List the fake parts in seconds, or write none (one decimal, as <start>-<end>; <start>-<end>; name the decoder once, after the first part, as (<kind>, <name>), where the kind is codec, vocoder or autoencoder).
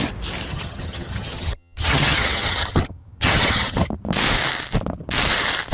0.5-3.9 (vocoder, HiFi-GAN)